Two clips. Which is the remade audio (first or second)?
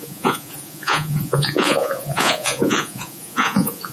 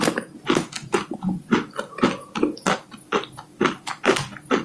first